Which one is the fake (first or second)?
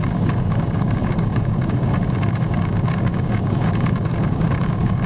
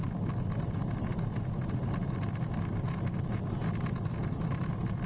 first